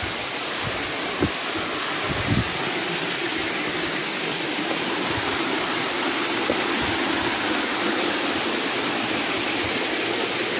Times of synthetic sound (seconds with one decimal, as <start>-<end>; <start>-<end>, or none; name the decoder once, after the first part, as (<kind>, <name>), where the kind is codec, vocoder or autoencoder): none